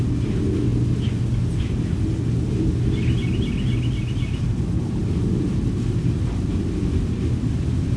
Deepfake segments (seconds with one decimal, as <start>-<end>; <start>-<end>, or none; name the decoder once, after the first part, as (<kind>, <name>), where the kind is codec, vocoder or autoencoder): none